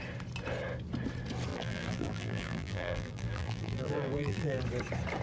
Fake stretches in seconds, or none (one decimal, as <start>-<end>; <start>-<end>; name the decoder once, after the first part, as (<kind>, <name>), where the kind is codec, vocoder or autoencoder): 1.5-4.6 (vocoder, BigVGAN v2)